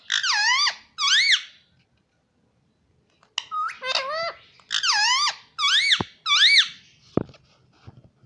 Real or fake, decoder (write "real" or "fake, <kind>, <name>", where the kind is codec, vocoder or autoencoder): real